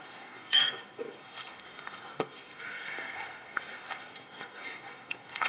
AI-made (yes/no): yes